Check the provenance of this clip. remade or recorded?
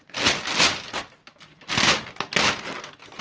recorded